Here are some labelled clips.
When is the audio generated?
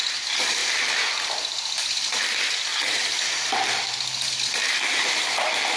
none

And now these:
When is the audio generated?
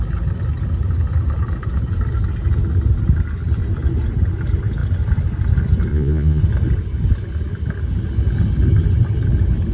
5.9-6.4 (vocoder, Vocos)